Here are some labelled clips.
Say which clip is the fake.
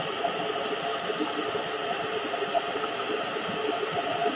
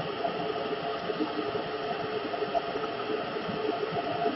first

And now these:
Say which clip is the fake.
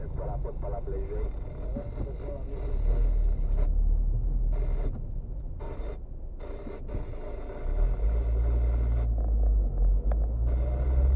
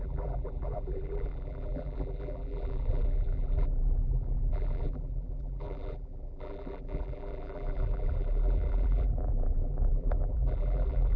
second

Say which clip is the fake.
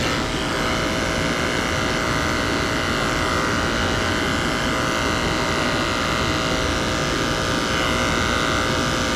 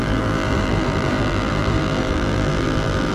second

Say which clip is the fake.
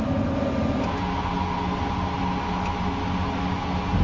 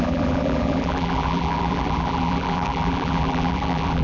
second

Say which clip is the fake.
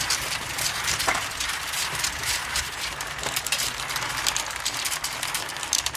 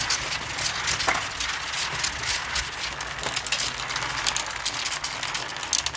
first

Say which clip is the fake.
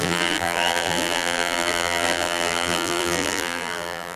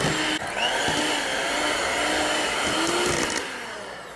first